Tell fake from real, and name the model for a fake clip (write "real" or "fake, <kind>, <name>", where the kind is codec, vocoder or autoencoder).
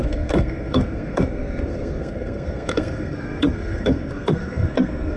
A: fake, codec, SNAC